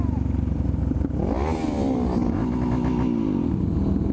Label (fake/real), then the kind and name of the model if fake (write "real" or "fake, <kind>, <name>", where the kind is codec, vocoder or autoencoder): real